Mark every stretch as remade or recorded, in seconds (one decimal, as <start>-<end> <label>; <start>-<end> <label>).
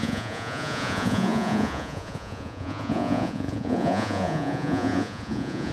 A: 0.0-5.7 remade